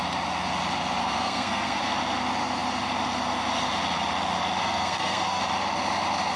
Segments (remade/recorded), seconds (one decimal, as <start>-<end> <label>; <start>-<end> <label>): 0.0-1.0 recorded; 1.0-1.8 remade; 1.8-4.6 recorded; 4.6-5.4 remade; 5.4-6.4 recorded